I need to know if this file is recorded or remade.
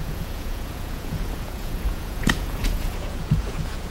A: remade